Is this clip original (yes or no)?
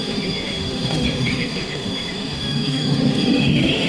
no